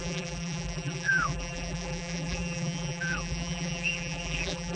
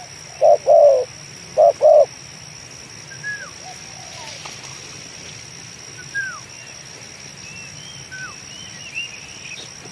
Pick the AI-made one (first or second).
first